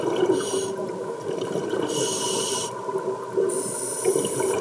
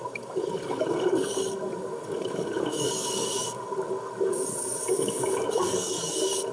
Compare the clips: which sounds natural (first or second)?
first